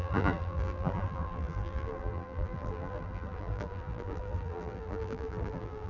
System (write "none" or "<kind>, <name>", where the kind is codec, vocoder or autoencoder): vocoder, BigVGAN v2